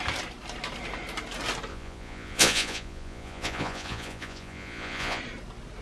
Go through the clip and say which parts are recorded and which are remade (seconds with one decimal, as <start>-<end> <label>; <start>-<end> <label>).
0.0-1.7 recorded; 1.7-5.2 remade; 5.2-5.8 recorded